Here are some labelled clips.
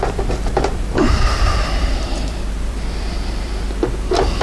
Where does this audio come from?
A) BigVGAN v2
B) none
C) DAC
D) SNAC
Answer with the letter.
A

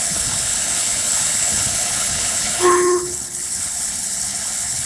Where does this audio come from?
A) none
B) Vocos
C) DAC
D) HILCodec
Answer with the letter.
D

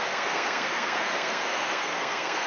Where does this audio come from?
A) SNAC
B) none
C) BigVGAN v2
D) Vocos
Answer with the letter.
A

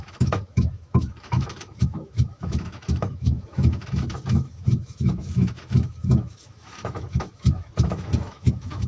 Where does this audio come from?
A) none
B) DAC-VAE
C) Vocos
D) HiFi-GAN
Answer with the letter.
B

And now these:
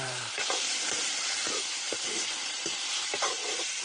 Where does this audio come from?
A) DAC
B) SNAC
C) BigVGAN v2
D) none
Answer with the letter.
C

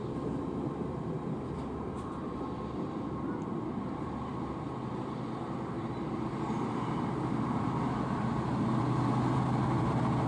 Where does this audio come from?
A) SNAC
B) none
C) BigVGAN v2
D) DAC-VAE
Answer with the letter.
C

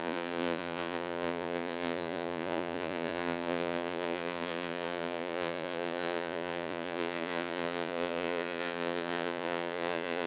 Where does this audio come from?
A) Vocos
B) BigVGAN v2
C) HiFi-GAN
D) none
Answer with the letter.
A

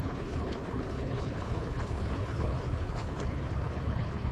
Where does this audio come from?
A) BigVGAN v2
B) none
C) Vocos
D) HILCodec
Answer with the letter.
D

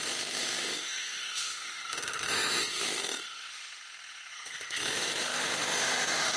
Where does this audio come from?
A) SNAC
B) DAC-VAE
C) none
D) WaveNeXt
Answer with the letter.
B